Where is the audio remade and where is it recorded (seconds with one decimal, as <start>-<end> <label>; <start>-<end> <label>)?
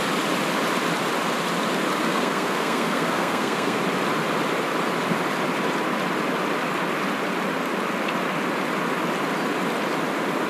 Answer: 0.0-2.0 recorded; 2.0-3.8 remade; 3.8-10.5 recorded